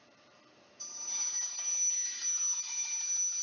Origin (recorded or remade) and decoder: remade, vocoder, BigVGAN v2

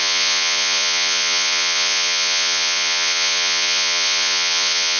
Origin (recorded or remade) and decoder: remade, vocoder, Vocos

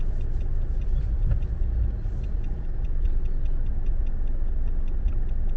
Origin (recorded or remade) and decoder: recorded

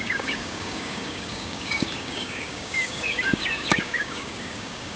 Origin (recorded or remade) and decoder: remade, codec, DAC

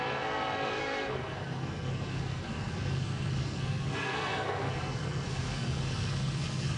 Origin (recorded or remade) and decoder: remade, codec, SNAC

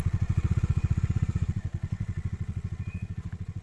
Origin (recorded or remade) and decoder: remade, vocoder, Vocos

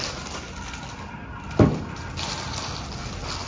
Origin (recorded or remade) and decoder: recorded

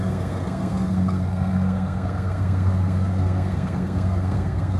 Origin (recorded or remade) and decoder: remade, codec, SNAC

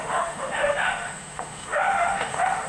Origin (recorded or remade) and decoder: remade, autoencoder, DAC-VAE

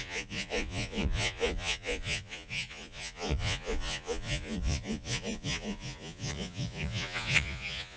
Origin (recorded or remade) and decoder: remade, vocoder, Vocos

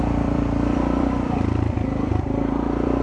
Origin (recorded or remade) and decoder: remade, vocoder, BigVGAN v2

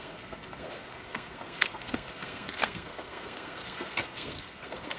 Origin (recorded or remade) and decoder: remade, codec, SNAC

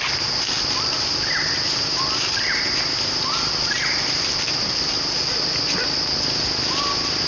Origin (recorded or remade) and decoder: recorded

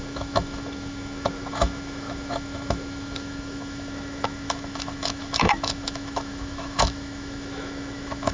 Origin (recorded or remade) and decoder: remade, autoencoder, DAC-VAE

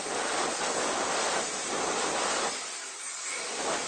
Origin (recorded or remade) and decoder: recorded